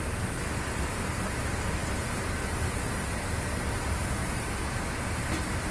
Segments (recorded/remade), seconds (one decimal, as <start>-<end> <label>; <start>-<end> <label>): 0.0-5.7 recorded